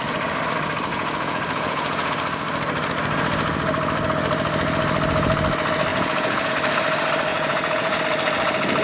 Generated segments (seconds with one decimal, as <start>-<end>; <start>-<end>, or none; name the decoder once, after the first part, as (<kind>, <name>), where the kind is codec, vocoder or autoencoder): 0.9-2.1 (vocoder, Vocos); 5.9-6.5; 7.3-8.0